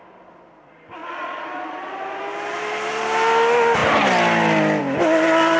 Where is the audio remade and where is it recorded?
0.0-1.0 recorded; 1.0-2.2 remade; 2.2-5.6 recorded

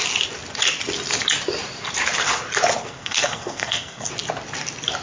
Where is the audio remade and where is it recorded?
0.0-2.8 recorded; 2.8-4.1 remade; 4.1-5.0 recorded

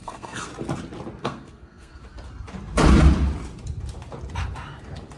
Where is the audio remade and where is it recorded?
0.0-0.5 remade; 0.5-1.2 recorded; 1.2-2.0 remade; 2.0-5.2 recorded

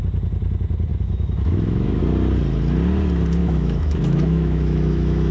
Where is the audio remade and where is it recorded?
0.0-0.9 recorded; 0.9-2.0 remade; 2.0-3.4 recorded; 3.4-5.3 remade